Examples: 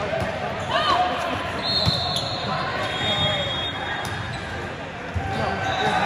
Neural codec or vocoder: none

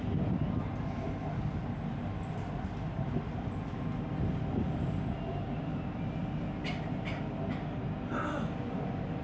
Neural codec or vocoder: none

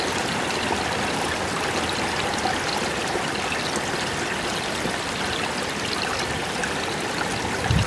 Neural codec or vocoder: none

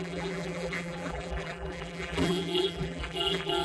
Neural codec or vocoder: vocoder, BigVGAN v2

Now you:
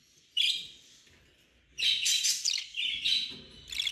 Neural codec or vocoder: vocoder, BigVGAN v2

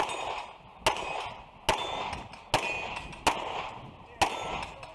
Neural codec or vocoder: none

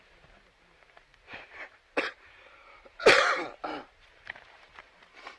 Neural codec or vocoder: vocoder, BigVGAN v2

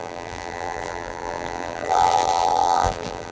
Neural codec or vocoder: vocoder, BigVGAN v2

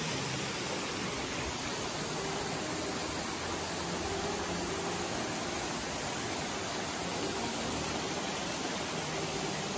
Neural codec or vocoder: none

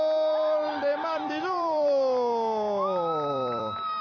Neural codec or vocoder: vocoder, BigVGAN v2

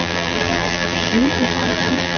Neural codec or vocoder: vocoder, BigVGAN v2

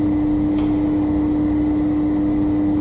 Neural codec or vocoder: none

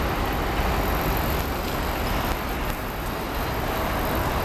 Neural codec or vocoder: none